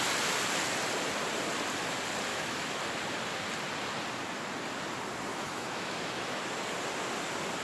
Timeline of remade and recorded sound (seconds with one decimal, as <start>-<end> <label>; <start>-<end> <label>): 0.0-2.3 recorded; 2.3-2.8 remade; 2.8-5.3 recorded; 5.3-6.4 remade; 6.4-7.6 recorded